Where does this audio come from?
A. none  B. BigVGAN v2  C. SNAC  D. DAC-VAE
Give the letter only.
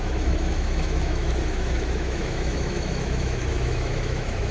D